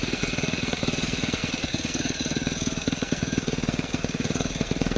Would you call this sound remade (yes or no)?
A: yes